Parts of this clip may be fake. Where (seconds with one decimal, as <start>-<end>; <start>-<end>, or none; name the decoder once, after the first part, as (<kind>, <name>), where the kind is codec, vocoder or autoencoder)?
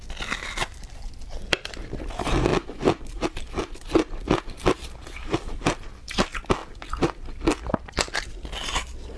none